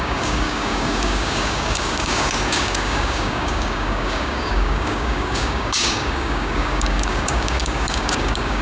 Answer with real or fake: fake